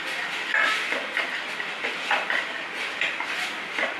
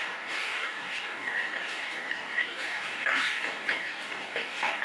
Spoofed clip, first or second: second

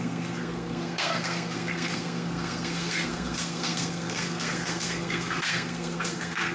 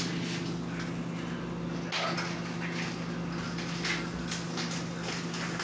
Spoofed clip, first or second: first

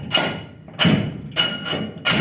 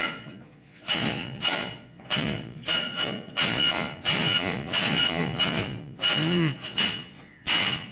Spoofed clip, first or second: second